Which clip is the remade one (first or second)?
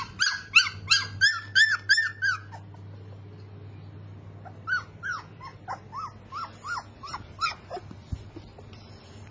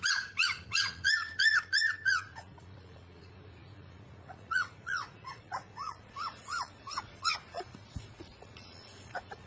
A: second